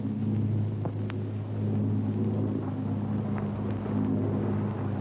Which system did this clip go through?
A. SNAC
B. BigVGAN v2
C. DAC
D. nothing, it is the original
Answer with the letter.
D